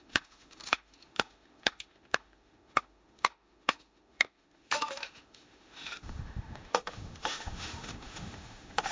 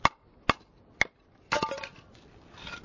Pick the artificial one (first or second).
first